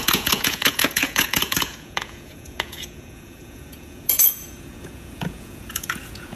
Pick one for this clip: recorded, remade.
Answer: remade